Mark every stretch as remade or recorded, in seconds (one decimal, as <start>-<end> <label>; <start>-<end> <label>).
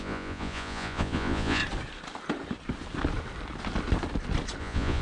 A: 0.0-1.6 remade; 1.6-4.6 recorded; 4.6-5.0 remade